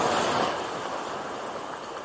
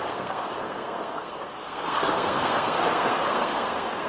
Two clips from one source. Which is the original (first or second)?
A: first